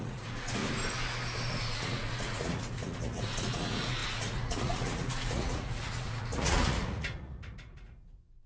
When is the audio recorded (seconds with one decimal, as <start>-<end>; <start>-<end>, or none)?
0.6-1.6